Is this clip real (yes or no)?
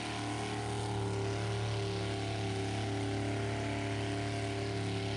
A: yes